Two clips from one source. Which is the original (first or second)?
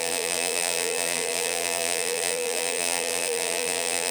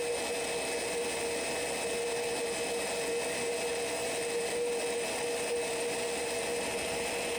second